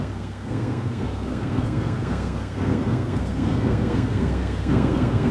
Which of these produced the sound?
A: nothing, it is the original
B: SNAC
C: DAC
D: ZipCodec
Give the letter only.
B